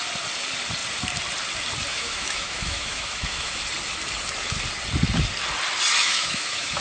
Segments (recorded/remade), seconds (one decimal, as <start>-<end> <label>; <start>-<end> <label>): 0.0-1.9 recorded; 1.9-3.6 remade; 3.6-6.0 recorded; 6.0-6.8 remade